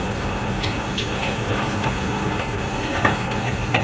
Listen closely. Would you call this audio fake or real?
fake